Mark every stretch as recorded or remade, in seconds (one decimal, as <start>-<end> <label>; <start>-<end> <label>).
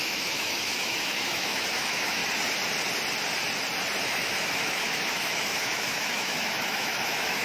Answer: 0.0-2.2 remade; 2.2-4.0 recorded; 4.0-7.4 remade